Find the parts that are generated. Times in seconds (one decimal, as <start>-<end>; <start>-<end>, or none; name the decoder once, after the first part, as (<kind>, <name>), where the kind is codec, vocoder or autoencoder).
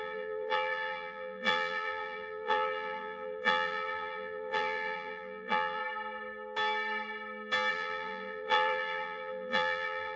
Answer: 0.0-5.8 (vocoder, BigVGAN v2); 7.7-10.2